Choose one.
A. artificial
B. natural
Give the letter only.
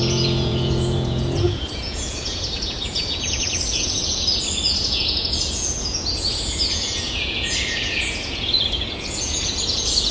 A